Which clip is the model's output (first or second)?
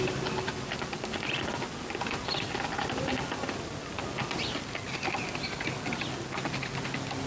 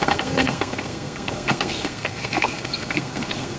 second